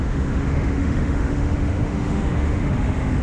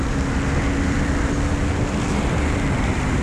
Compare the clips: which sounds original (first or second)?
second